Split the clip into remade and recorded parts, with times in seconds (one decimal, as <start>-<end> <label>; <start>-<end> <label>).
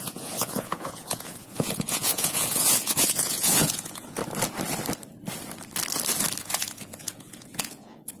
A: 0.0-4.2 remade; 4.2-6.4 recorded; 6.4-8.2 remade